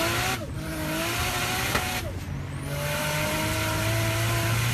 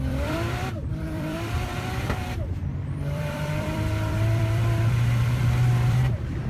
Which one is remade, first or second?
second